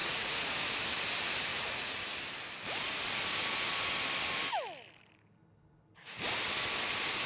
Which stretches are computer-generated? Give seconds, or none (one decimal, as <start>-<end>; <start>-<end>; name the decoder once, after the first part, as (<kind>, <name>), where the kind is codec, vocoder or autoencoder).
0.0-0.5 (vocoder, Vocos); 1.5-2.0